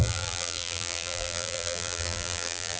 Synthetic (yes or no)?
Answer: yes